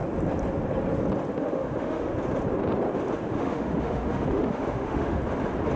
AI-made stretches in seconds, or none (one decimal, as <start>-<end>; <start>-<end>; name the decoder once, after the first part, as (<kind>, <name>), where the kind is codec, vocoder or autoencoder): 1.4-2.1 (autoencoder, DAC-VAE); 3.4-5.2